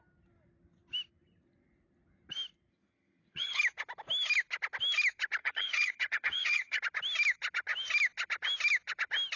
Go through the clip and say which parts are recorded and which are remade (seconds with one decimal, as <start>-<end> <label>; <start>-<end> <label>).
0.0-2.7 recorded; 2.7-3.6 remade; 3.6-5.4 recorded; 5.4-6.8 remade; 6.8-9.4 recorded